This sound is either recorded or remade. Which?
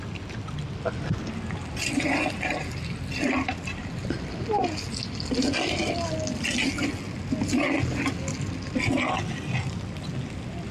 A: recorded